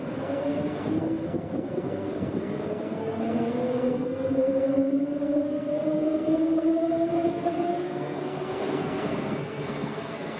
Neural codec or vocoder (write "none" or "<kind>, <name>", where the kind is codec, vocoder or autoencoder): codec, SNAC